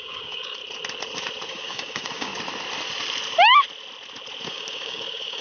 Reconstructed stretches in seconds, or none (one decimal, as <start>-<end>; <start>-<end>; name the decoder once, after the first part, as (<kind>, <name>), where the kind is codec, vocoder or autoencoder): 0.0-0.6 (codec, DAC); 1.5-2.3; 4.5-5.4